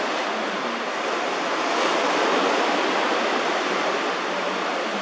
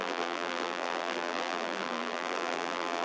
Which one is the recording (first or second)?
first